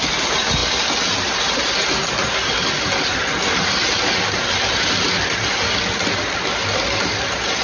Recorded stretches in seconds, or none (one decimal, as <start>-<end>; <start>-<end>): 0.0-7.6